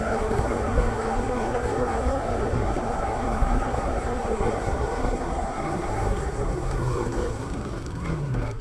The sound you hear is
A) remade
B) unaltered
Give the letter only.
A